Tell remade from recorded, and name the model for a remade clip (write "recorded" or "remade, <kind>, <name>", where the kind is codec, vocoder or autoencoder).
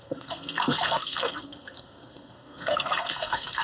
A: remade, codec, SNAC